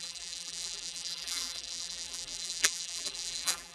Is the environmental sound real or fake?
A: fake